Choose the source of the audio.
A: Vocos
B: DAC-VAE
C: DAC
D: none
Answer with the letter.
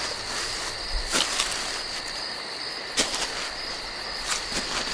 D